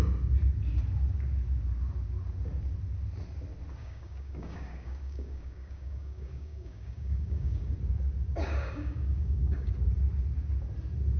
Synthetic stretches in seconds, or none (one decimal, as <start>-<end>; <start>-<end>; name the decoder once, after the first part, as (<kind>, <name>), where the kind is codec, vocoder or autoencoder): 3.8-7.7 (codec, DAC); 8.4-9.7